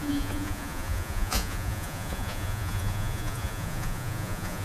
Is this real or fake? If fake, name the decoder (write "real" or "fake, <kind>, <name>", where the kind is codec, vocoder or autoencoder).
fake, vocoder, Vocos